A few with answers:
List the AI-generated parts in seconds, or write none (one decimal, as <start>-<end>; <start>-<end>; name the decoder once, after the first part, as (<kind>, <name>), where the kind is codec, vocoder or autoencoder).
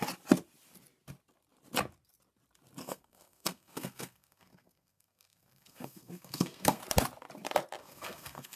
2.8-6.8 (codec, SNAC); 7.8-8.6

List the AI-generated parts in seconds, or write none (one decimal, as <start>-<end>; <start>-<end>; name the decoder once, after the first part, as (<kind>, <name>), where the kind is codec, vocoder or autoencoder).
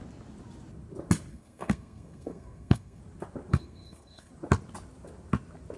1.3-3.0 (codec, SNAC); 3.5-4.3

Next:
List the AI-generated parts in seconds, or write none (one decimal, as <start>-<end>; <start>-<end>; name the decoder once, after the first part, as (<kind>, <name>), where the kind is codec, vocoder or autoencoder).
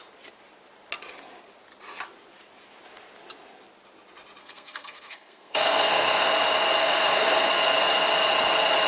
4.4-6.3 (codec, SNAC); 6.8-7.5